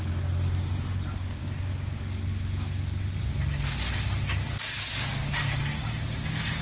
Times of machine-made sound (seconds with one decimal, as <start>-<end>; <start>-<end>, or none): none

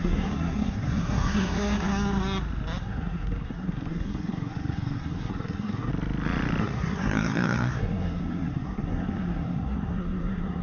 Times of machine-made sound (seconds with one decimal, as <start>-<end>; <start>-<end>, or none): 0.0-1.9; 2.8-5.9; 6.6-10.6

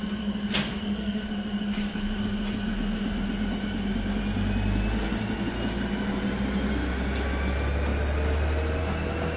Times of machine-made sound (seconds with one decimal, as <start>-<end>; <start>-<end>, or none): 0.7-1.3

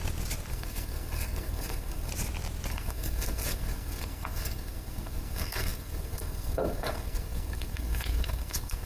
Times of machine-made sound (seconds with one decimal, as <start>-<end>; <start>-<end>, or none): 0.5-2.1; 2.7-8.9